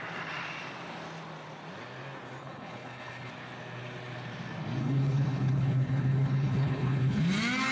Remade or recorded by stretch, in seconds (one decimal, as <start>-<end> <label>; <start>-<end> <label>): 0.0-2.4 recorded; 2.4-3.3 remade; 3.3-4.8 recorded; 4.8-7.2 remade; 7.2-7.7 recorded